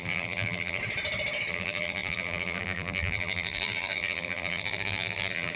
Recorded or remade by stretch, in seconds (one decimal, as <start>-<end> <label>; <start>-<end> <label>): 0.0-0.8 remade; 0.8-1.5 recorded; 1.5-5.6 remade